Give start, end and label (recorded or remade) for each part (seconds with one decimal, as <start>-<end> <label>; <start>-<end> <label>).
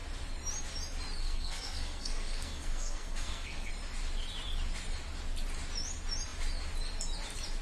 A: 0.0-1.2 recorded; 1.2-3.7 remade; 3.7-7.6 recorded